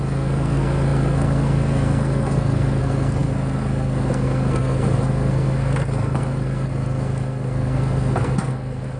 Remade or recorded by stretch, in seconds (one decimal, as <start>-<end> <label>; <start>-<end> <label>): 0.0-9.0 remade